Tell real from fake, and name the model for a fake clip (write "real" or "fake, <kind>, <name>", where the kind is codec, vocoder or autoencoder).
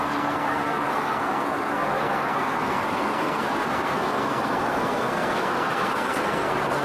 fake, codec, SNAC